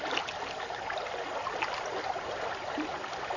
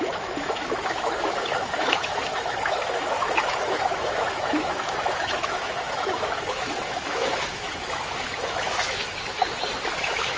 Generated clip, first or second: second